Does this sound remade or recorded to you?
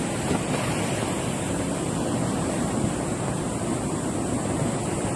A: recorded